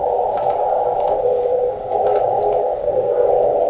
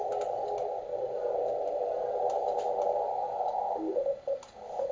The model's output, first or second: first